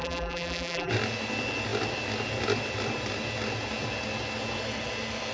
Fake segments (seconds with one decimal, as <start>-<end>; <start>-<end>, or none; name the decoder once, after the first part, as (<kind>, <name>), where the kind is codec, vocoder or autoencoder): 0.0-0.9 (vocoder, BigVGAN v2)